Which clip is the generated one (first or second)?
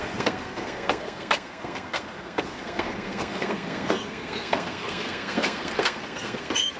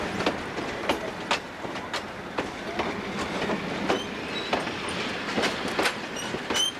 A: first